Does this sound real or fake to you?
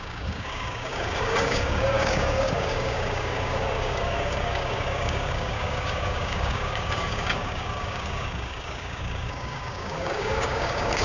fake